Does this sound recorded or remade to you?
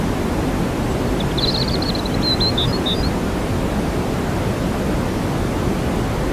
recorded